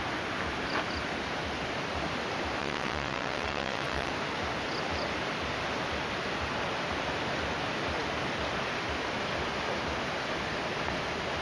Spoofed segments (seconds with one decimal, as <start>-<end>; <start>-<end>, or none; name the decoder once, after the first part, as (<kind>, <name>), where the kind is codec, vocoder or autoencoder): 2.6-4.1 (vocoder, WaveNeXt)